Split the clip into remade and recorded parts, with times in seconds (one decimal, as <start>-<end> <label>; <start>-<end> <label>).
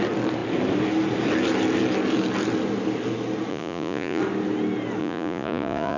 0.0-3.5 recorded; 3.5-4.2 remade; 4.2-5.0 recorded; 5.0-6.0 remade